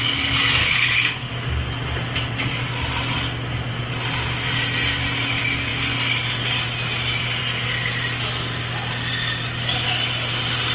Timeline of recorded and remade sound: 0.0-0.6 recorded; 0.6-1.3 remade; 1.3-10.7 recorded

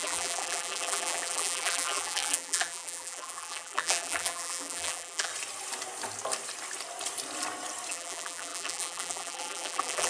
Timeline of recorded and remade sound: 0.0-5.3 remade; 5.3-7.9 recorded; 7.9-10.1 remade

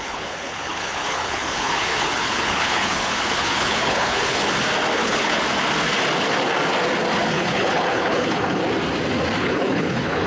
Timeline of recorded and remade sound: 0.0-4.4 remade; 4.4-5.0 recorded; 5.0-5.4 remade; 5.4-7.3 recorded; 7.3-8.6 remade; 8.6-9.4 recorded; 9.4-10.3 remade

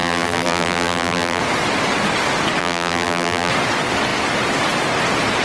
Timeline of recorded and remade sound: 0.0-1.4 remade; 1.4-2.6 recorded; 2.6-3.5 remade; 3.5-5.4 recorded

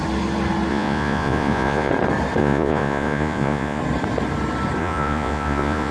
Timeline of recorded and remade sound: 0.0-0.7 recorded; 0.7-1.9 remade; 1.9-2.4 recorded; 2.4-3.8 remade; 3.8-4.8 recorded; 4.8-5.9 remade

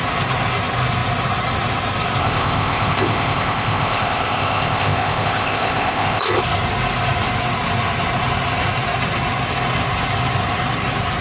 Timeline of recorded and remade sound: 0.0-2.2 recorded; 2.2-6.4 remade; 6.4-11.2 recorded

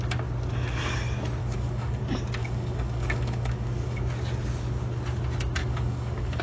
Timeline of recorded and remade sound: 0.0-1.4 recorded; 1.4-2.0 remade; 2.0-2.4 recorded; 2.4-4.0 remade; 4.0-5.6 recorded; 5.6-6.4 remade